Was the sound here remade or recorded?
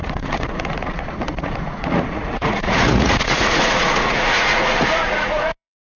remade